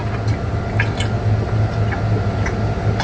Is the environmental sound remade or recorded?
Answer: recorded